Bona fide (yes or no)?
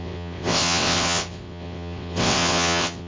no